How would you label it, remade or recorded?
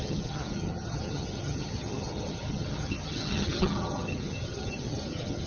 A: remade